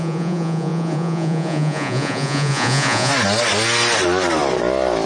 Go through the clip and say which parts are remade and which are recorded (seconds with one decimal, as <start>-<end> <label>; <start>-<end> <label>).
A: 0.0-3.1 remade; 3.1-5.1 recorded